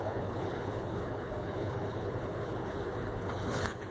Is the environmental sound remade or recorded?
remade